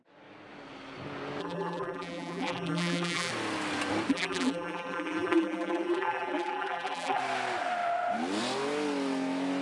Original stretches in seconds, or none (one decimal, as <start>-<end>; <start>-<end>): 0.0-1.4; 3.3-4.1; 7.2-9.6